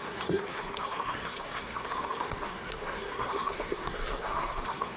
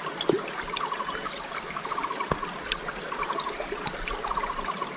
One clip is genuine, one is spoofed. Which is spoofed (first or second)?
first